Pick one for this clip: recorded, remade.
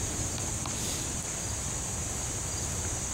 recorded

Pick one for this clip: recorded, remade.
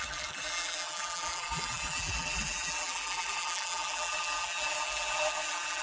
remade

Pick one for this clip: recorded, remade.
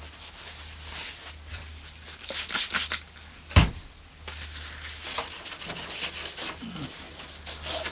recorded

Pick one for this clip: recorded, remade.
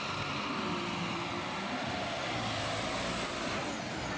recorded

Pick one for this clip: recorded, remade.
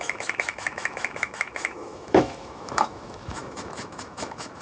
remade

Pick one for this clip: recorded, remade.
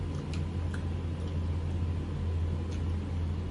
recorded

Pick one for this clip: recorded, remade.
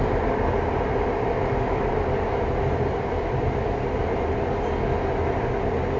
recorded